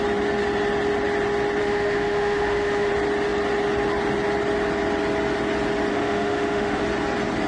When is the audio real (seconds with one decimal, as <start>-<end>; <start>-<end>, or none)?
0.0-1.6; 2.9-5.9; 6.8-7.5